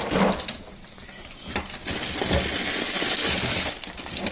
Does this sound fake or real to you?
real